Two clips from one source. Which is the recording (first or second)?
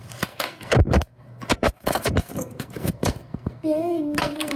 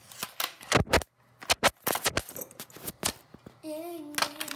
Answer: second